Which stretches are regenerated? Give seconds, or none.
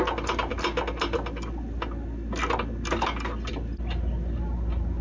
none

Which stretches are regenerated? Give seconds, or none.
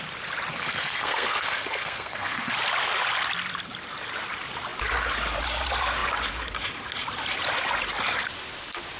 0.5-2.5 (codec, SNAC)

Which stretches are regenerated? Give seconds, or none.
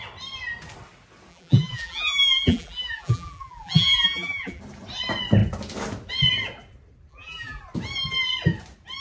1.3-4.6 (vocoder, BigVGAN v2); 7.1-7.6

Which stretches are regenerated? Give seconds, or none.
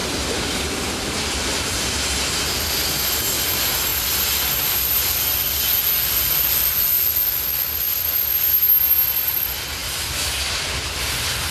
0.0-0.6 (vocoder, BigVGAN v2); 9.8-11.5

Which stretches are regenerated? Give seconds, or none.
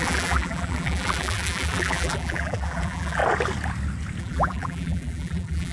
0.0-3.2 (vocoder, BigVGAN v2); 4.2-5.7